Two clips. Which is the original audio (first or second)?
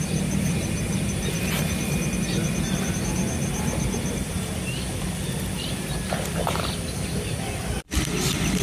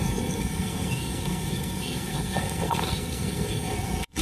first